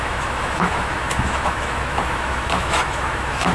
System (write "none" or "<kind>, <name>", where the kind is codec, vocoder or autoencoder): autoencoder, DAC-VAE